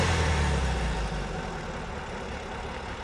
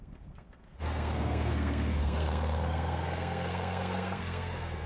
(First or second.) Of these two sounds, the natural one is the first